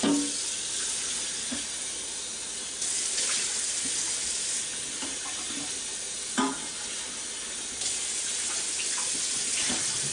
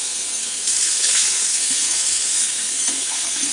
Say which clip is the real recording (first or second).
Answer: first